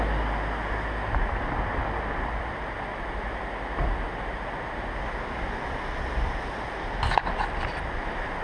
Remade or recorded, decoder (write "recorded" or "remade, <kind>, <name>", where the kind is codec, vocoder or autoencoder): recorded